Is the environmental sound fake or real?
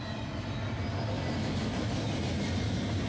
real